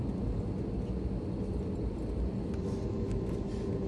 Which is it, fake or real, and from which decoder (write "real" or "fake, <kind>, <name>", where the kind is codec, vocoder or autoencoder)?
real